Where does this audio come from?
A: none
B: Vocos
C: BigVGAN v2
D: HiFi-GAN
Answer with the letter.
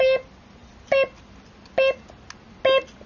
A